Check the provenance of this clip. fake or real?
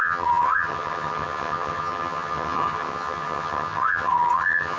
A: fake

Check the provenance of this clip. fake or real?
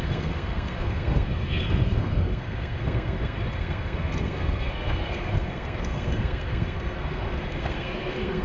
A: fake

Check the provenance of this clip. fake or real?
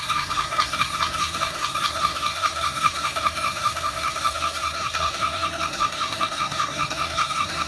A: fake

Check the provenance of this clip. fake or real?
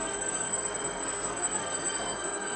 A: fake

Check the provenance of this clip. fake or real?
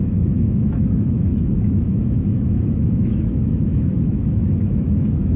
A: fake